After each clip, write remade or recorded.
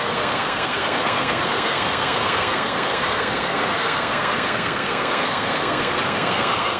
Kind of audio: remade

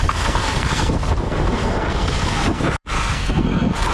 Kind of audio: remade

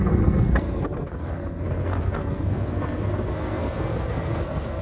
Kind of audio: remade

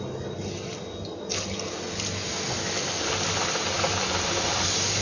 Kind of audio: recorded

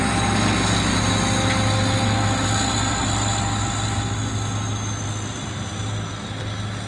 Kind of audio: recorded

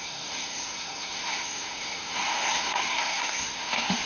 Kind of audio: remade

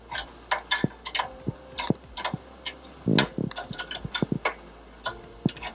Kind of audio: recorded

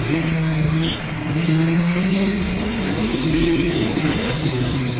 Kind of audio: remade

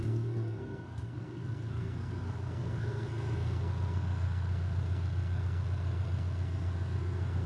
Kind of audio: remade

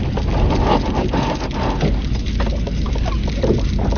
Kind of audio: recorded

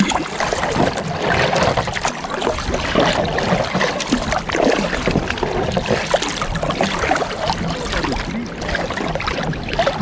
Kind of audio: recorded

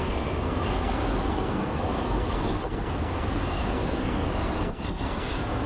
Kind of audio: remade